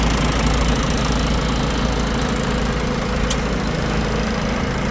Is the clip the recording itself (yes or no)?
yes